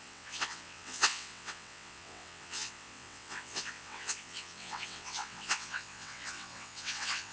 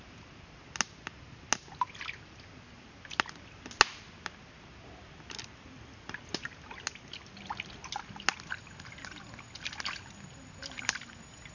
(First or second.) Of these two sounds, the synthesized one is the first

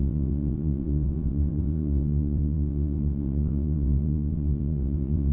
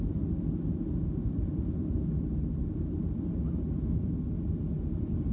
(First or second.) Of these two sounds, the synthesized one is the first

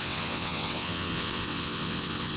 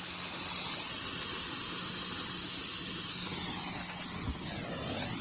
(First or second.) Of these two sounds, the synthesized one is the first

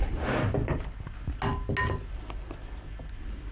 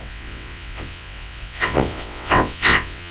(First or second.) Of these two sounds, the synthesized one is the second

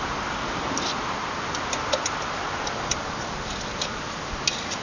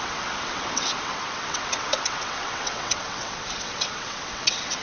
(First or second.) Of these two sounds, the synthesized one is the second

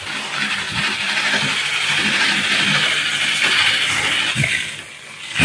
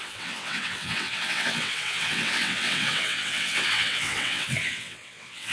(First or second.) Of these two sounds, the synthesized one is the second